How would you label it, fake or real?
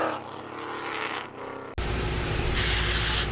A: real